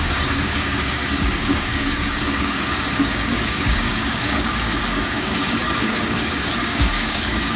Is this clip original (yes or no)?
no